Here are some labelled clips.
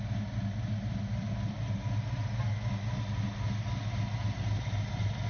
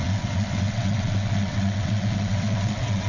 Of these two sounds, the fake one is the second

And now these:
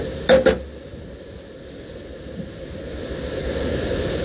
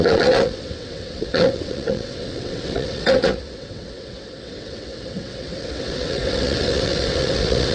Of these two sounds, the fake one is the second